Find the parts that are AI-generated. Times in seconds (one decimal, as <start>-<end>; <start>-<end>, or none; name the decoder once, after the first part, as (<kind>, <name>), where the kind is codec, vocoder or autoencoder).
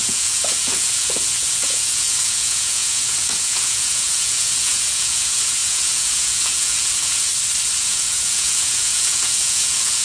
0.0-7.3 (vocoder, Vocos); 7.8-10.0